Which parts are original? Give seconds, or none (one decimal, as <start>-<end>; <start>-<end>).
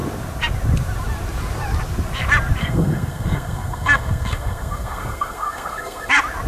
0.0-2.6; 6.1-6.5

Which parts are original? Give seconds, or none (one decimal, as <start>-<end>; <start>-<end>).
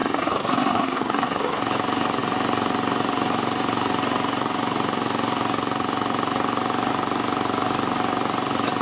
1.6-8.8